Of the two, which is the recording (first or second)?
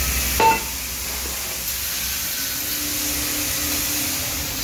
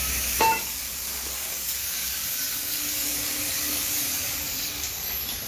first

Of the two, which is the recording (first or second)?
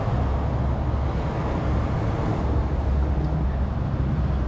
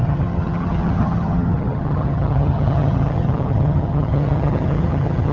first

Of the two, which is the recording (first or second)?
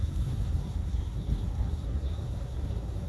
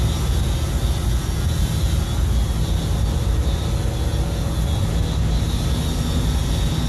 second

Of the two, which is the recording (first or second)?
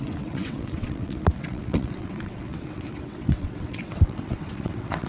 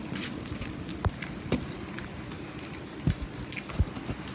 second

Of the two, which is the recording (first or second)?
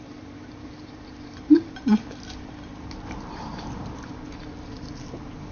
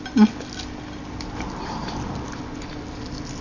second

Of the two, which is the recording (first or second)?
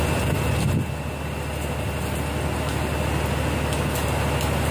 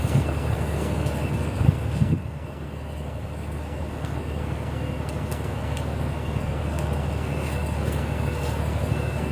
first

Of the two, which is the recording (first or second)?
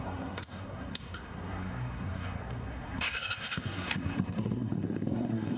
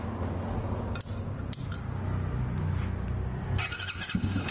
second